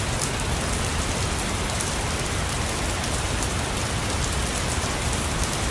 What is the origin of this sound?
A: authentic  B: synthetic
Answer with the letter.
A